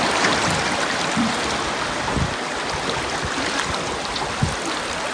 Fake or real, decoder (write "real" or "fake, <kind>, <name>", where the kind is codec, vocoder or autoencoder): real